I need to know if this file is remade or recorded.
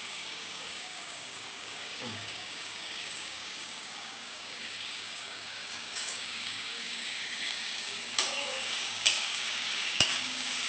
remade